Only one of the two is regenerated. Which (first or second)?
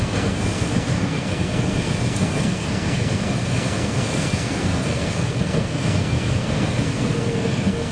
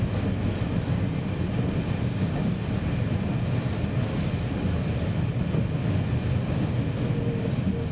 first